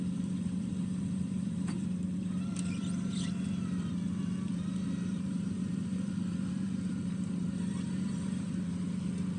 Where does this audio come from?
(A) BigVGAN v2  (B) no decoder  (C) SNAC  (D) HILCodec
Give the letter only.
A